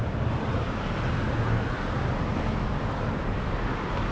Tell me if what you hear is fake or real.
real